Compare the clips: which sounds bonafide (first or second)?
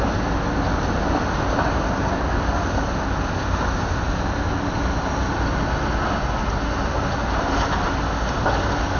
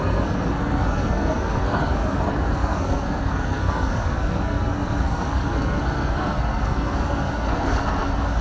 first